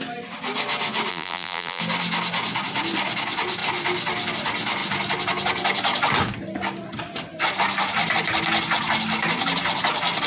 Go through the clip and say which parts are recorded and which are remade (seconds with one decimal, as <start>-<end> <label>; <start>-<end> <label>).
0.0-1.1 recorded; 1.1-1.8 remade; 1.8-10.3 recorded